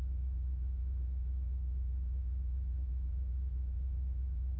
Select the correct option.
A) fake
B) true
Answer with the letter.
A